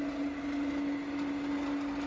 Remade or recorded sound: recorded